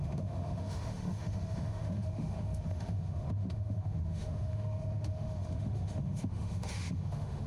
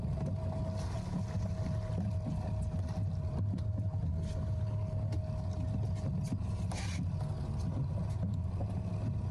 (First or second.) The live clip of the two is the second